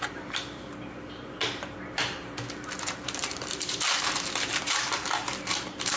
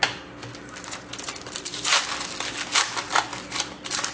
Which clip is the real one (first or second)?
second